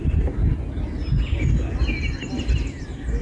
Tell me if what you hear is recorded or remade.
recorded